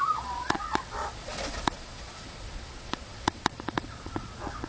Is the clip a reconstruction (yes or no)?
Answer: yes